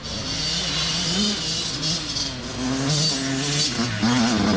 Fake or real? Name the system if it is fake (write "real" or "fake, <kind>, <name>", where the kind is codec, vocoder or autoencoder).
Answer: real